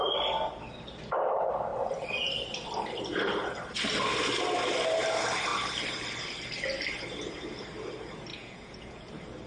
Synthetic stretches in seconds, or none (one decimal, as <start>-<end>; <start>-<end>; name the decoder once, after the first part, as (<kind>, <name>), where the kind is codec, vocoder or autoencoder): 8.3-9.1 (vocoder, Vocos)